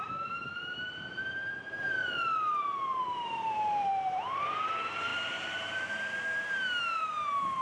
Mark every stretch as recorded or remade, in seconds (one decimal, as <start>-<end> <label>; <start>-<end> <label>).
0.0-2.0 remade; 2.0-3.0 recorded; 3.0-7.6 remade